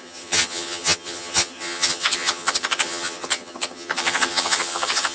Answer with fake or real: fake